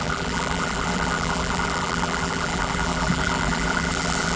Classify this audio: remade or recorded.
remade